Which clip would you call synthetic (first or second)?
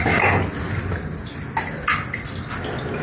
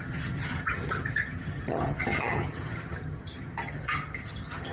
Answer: second